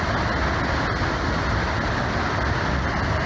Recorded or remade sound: recorded